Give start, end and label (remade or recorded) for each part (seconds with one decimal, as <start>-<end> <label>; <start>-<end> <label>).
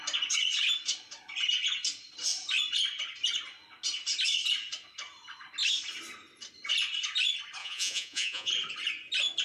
0.0-7.6 recorded; 7.6-8.5 remade; 8.5-9.4 recorded